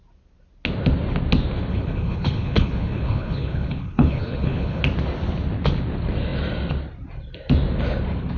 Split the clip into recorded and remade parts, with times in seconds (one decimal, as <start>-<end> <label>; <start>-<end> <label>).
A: 0.0-1.7 recorded; 1.7-4.8 remade; 4.8-8.4 recorded